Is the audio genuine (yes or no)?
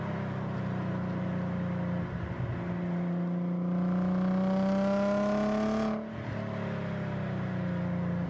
yes